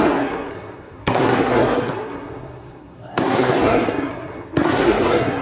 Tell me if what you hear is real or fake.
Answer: fake